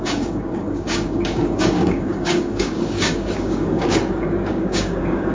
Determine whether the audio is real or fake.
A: fake